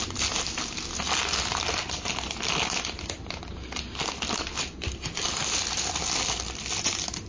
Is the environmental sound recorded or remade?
remade